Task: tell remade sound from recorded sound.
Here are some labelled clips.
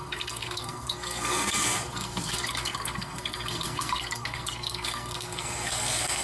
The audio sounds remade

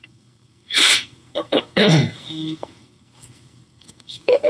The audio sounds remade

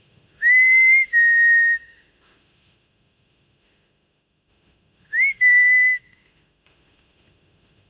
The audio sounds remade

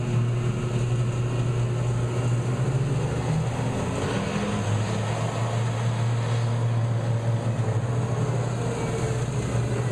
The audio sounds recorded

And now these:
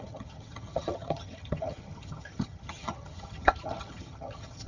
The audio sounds remade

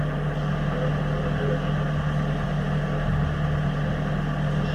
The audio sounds recorded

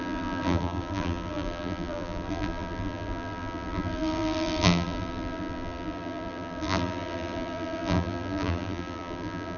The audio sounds remade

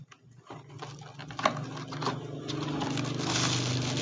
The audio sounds recorded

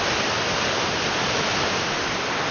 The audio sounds recorded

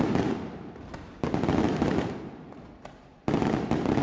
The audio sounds recorded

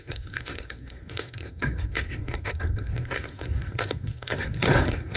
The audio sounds remade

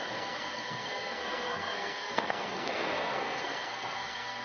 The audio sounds remade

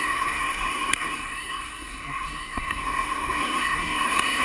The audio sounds remade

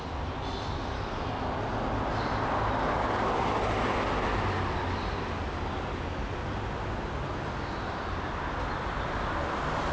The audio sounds recorded